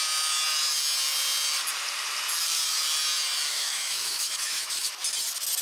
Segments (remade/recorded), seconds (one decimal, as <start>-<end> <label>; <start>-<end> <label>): 0.0-3.5 recorded; 3.5-4.9 remade; 4.9-5.6 recorded